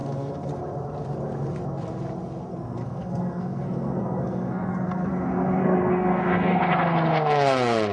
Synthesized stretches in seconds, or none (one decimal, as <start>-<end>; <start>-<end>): 0.0-0.5; 2.5-5.1; 5.6-6.6

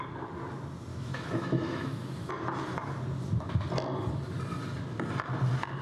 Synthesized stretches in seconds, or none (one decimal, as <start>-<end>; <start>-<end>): 0.9-2.3